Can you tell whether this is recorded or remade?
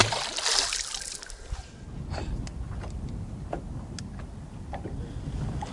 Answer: recorded